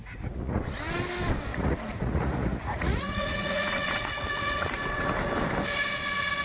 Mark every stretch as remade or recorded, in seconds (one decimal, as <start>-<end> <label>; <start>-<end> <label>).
0.0-0.6 remade; 0.6-1.5 recorded; 1.5-5.3 remade; 5.3-6.4 recorded